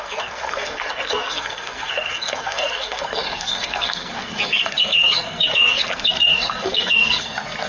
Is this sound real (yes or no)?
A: no